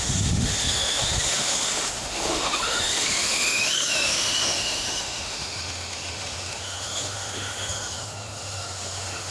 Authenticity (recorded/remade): remade